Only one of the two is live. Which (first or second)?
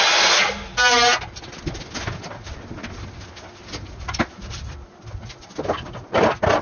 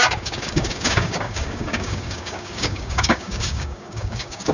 first